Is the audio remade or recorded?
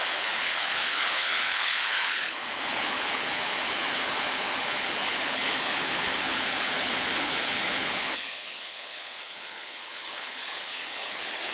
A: remade